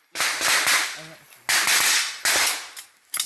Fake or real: real